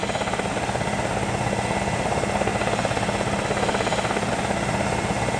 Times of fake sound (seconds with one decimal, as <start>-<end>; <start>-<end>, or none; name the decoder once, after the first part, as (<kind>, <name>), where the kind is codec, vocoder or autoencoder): none